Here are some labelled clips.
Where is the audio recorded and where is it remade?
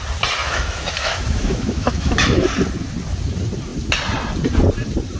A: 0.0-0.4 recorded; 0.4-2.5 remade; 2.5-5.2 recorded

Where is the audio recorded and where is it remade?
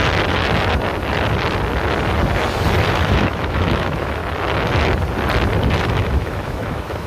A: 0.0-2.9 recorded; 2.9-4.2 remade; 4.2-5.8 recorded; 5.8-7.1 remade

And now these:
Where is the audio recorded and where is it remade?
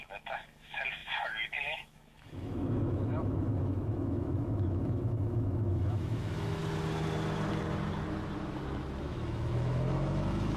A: 0.0-6.6 remade; 6.6-9.0 recorded; 9.0-10.6 remade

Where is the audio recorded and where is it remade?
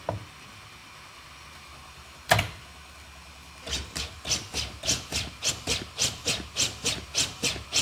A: 0.0-7.8 recorded